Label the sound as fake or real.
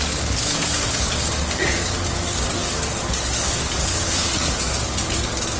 fake